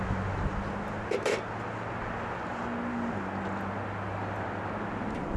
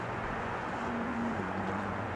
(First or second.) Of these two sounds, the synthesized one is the second